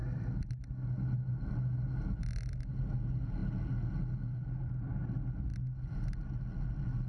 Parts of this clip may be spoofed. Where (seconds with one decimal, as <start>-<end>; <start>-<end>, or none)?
none